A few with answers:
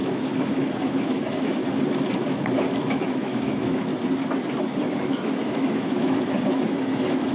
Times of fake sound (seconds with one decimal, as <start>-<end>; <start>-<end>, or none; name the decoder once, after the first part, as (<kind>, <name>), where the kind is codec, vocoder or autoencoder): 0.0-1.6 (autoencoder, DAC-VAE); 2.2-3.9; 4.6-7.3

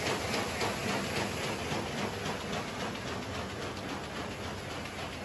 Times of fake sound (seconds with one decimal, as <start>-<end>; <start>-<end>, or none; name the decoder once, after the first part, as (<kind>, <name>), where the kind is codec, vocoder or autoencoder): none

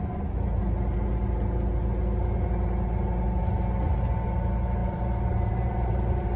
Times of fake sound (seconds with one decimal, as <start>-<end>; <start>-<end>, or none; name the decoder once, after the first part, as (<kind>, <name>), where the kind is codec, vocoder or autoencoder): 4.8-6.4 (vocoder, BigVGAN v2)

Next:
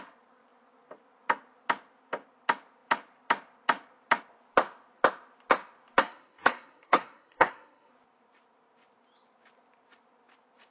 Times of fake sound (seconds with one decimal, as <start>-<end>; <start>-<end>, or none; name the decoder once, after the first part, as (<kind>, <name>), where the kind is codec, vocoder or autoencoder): 6.0-7.9 (codec, SNAC)

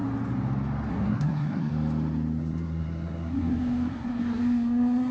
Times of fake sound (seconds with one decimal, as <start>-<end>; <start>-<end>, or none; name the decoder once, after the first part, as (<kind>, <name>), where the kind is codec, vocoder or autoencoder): 0.9-1.7 (codec, SNAC); 2.4-5.1

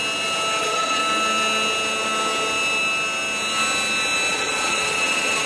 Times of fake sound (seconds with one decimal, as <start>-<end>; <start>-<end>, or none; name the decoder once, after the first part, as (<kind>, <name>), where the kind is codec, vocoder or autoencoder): 0.6-1.0 (vocoder, Vocos); 4.3-5.5